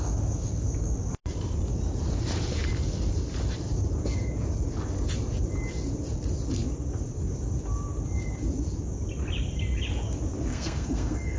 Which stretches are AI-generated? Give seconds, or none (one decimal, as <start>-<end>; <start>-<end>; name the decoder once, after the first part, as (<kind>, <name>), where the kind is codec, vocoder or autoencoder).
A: 10.5-11.4 (codec, SNAC)